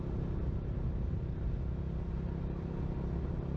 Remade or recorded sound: recorded